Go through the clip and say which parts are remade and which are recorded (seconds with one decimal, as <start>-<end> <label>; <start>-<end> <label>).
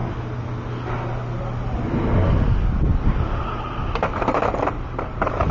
0.0-5.5 recorded